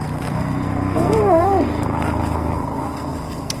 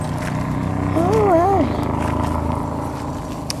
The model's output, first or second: first